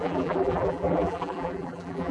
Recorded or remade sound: remade